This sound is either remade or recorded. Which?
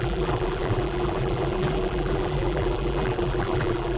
remade